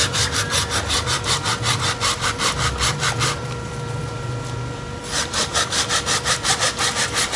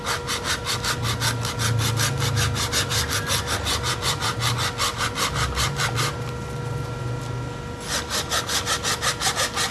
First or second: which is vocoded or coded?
first